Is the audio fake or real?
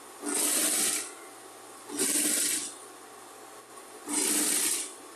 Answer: real